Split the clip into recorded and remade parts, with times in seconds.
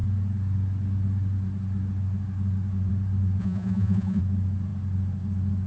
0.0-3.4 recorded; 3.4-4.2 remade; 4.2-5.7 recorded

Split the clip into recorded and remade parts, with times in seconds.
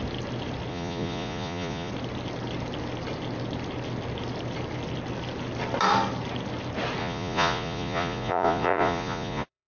0.0-0.7 recorded; 0.7-1.9 remade; 1.9-7.0 recorded; 7.0-9.7 remade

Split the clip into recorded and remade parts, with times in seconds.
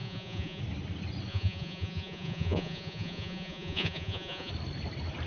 0.0-0.6 remade; 0.6-1.3 recorded; 1.3-4.5 remade; 4.5-5.3 recorded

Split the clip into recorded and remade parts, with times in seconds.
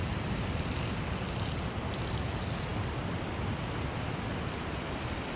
0.0-5.4 recorded